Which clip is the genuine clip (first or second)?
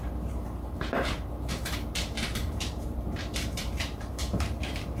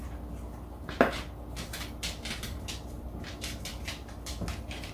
second